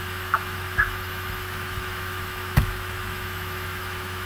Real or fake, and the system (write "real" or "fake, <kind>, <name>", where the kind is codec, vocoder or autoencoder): fake, autoencoder, DAC-VAE